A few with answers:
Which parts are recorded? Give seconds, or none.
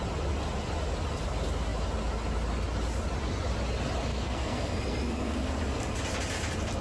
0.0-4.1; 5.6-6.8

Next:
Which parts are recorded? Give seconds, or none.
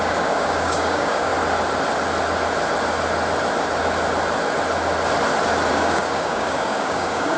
1.3-5.7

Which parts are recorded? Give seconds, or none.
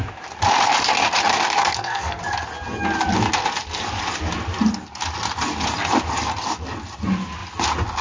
0.0-1.6; 2.2-8.0